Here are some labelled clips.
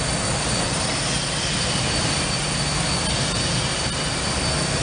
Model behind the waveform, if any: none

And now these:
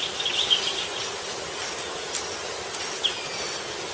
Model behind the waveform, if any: none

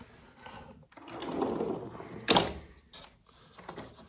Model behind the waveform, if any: none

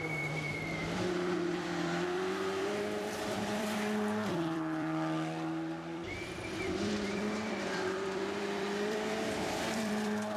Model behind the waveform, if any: vocoder, BigVGAN v2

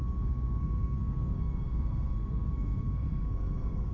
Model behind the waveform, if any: codec, SNAC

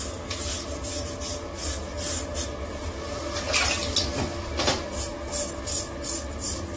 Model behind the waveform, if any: none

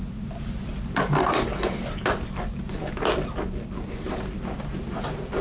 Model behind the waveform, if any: none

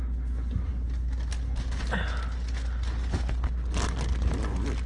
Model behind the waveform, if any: none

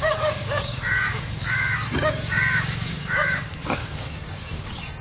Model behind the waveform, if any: codec, DAC